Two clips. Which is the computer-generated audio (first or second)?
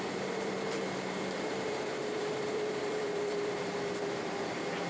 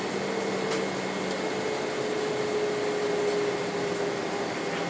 first